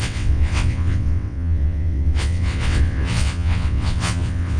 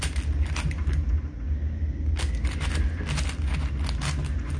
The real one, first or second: second